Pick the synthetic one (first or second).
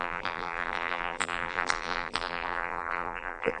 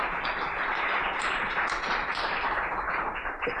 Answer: first